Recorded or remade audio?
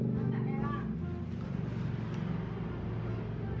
recorded